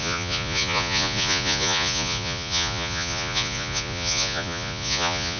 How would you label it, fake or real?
fake